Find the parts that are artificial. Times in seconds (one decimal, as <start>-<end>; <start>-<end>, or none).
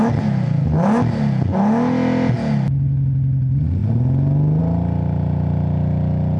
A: none